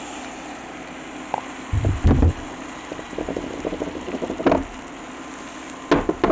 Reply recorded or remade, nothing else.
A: recorded